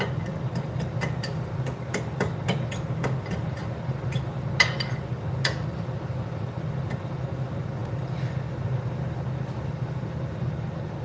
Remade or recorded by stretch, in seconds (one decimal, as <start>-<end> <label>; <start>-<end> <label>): 0.0-11.0 recorded